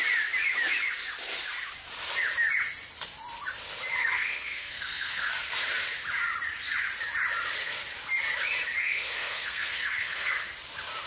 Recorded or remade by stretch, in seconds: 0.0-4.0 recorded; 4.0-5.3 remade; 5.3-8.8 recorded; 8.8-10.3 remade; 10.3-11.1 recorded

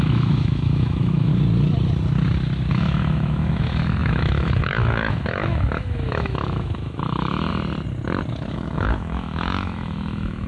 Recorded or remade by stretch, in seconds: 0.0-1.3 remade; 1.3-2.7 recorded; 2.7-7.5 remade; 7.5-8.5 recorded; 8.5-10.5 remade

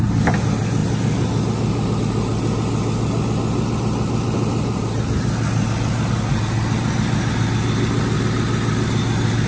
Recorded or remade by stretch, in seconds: 0.0-9.5 recorded